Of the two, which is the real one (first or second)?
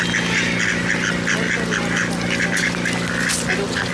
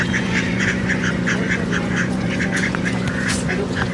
first